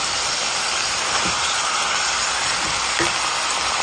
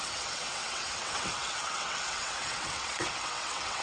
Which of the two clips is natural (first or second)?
first